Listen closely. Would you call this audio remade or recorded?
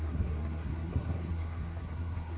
remade